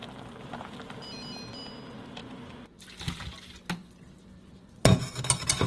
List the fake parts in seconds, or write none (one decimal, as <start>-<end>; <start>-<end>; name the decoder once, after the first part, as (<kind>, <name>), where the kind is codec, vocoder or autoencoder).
2.2-2.8 (vocoder, Vocos); 3.8-5.2